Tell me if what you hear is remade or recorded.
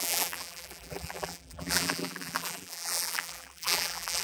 remade